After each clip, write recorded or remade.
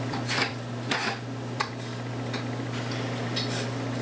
remade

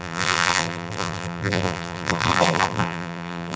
remade